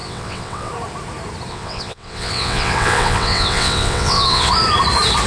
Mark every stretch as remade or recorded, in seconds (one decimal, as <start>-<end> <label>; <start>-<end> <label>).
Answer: 0.0-0.7 remade; 0.7-1.5 recorded; 1.5-4.5 remade; 4.5-5.3 recorded